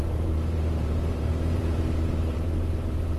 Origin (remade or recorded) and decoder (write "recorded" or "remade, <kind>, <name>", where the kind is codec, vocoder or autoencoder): remade, vocoder, BigVGAN v2